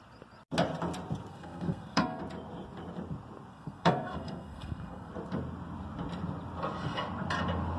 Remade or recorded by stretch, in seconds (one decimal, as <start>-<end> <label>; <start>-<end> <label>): 0.0-1.3 recorded; 1.3-2.2 remade; 2.2-3.5 recorded; 3.5-5.1 remade; 5.1-7.8 recorded